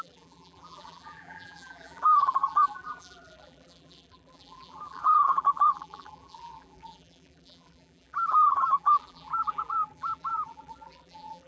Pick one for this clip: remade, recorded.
remade